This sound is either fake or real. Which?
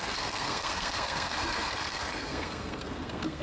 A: fake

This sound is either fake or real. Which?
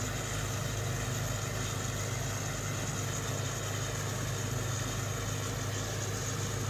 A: real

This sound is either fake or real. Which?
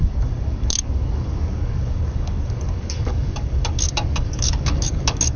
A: fake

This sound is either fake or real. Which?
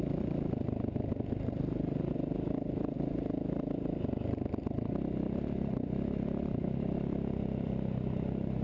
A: real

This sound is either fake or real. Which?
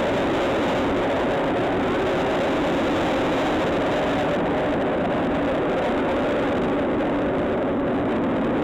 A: real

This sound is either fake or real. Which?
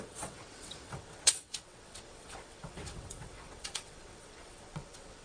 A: fake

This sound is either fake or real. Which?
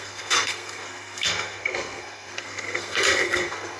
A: fake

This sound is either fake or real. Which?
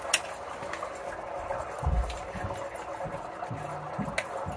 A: real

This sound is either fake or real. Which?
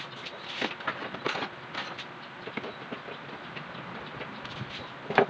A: real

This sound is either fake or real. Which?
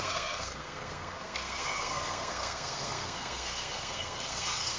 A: fake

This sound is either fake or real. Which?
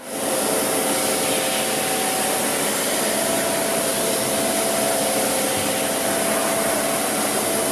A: real